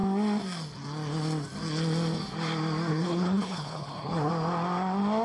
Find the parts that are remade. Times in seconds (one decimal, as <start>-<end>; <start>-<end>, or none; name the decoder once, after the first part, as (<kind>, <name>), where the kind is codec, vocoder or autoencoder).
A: 2.9-4.3 (codec, HILCodec)